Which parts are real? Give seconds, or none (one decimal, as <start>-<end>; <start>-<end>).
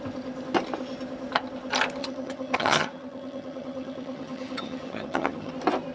0.0-2.0; 5.5-5.9